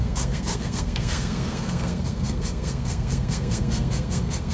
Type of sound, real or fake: fake